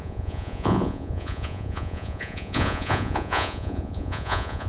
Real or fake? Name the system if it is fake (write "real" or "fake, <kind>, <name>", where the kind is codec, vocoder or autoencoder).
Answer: fake, vocoder, Vocos